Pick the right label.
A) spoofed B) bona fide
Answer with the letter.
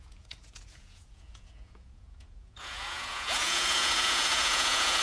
A